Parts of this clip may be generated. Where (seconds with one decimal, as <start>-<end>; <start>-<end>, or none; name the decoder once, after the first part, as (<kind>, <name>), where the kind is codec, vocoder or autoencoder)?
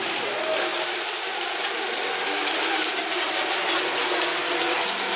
none